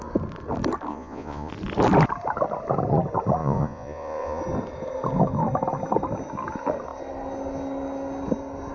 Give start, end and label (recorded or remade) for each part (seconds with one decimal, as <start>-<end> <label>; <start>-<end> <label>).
0.0-0.9 recorded; 0.9-1.5 remade; 1.5-3.4 recorded; 3.4-4.4 remade; 4.4-8.7 recorded